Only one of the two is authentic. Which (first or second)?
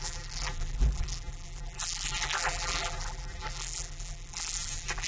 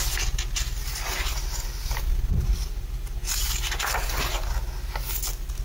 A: second